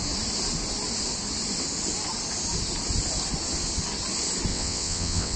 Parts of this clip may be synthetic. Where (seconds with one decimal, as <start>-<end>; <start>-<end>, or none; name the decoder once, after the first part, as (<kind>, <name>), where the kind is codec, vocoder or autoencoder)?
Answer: 4.5-5.4 (vocoder, WaveNeXt)